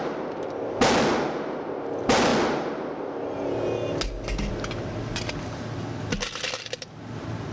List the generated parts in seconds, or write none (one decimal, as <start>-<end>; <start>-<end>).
none